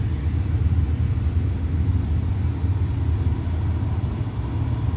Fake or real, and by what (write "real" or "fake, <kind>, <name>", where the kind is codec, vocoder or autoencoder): real